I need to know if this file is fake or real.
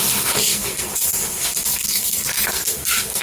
fake